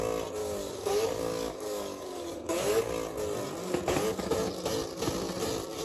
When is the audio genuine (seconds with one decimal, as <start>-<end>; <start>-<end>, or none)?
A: 0.0-0.4; 2.9-3.6; 4.3-5.8